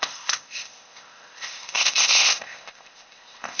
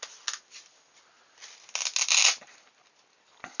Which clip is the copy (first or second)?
first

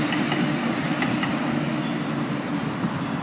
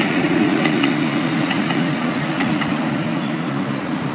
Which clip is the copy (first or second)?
second